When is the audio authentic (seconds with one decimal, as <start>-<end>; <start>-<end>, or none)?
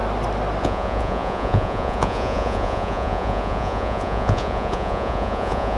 0.0-0.6